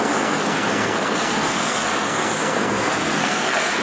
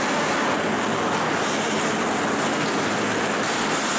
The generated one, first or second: first